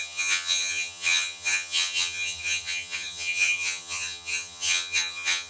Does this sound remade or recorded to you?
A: remade